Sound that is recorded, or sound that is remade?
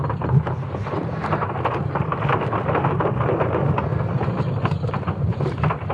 recorded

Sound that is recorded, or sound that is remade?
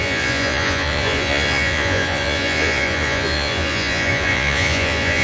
remade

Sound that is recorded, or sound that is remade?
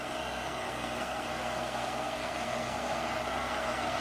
remade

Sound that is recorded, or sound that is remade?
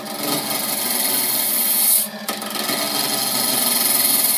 recorded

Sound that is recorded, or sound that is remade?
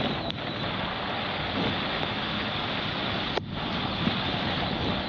recorded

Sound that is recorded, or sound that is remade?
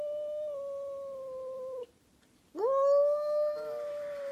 recorded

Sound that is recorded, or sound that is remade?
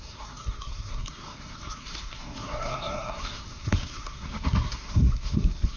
remade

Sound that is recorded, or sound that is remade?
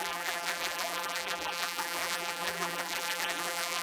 remade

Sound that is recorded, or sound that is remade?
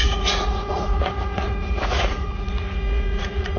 remade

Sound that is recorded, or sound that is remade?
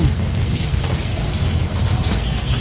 remade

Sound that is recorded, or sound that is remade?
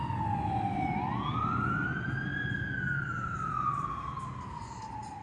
recorded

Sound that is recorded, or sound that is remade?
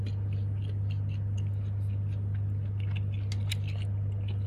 recorded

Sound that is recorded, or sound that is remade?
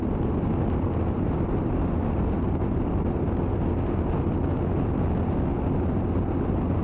recorded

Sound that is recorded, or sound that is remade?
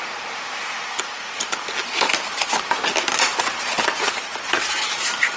recorded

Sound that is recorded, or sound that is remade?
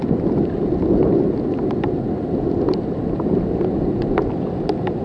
recorded